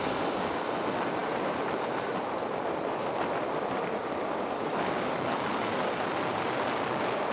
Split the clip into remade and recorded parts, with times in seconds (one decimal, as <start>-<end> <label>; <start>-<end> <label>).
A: 0.0-0.6 remade; 0.6-7.3 recorded